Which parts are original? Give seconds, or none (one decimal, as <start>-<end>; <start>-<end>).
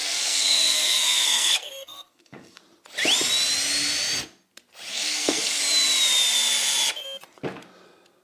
2.6-4.9; 5.6-8.2